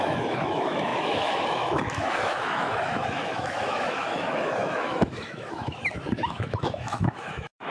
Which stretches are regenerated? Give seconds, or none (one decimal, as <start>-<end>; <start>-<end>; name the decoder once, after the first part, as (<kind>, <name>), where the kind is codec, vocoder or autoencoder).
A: 0.0-7.7 (autoencoder, DAC-VAE)